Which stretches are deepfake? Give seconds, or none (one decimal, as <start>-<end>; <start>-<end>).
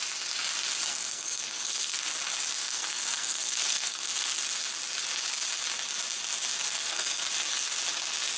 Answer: 0.9-2.1; 2.6-4.4; 6.6-7.3